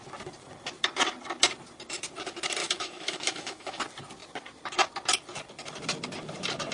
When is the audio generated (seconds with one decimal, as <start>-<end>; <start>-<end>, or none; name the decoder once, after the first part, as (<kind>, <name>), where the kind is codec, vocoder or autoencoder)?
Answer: 2.6-3.8 (autoencoder, DAC-VAE)